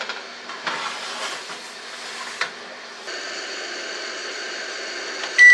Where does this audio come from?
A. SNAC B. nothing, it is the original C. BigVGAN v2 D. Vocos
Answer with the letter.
B